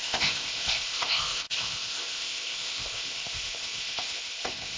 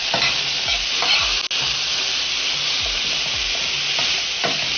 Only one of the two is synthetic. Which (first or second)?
first